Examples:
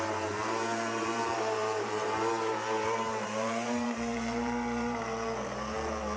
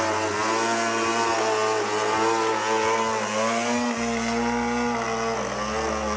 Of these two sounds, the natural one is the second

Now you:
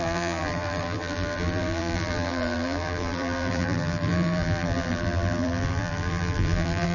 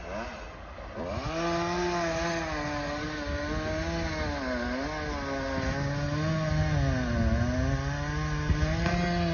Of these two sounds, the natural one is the second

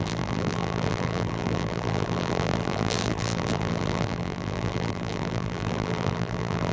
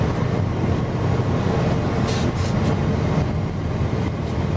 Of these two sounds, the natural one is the second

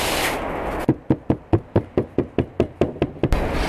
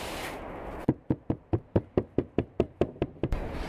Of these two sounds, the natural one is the first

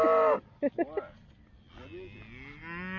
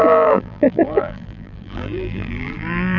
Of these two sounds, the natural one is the first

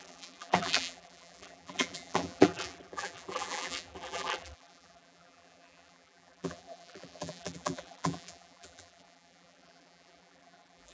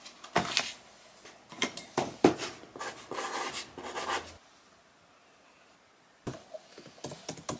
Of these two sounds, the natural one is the second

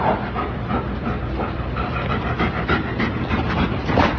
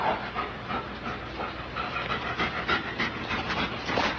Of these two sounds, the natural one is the second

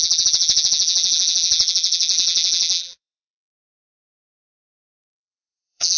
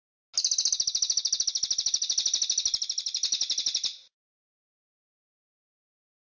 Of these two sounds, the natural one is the second